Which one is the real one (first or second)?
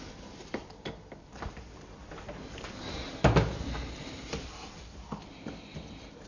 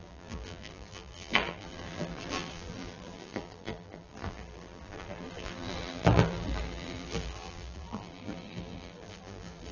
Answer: first